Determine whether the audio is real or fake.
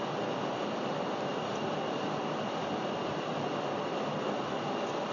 real